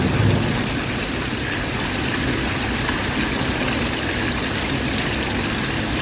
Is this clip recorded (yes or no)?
yes